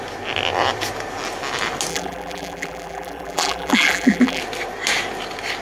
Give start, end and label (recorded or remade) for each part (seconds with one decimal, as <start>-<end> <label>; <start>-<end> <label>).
0.0-1.9 recorded; 1.9-4.4 remade; 4.4-5.6 recorded